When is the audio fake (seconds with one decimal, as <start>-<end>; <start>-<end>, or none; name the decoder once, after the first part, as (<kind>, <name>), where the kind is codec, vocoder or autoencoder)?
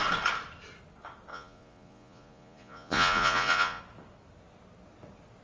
1.3-3.8 (vocoder, Vocos)